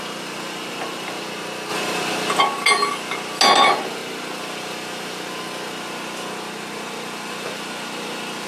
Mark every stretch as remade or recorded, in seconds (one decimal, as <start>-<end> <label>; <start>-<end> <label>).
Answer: 0.0-8.5 recorded